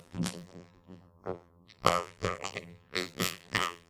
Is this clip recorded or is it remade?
remade